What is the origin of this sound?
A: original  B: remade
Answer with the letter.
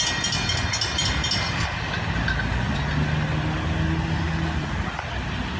A